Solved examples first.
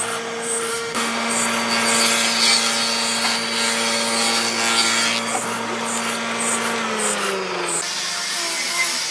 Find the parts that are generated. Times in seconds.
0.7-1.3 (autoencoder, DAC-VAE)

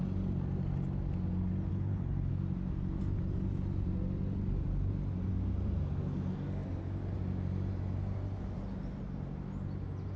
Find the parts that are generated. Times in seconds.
1.7-2.3 (codec, HILCodec)

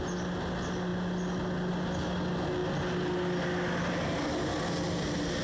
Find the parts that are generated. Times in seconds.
none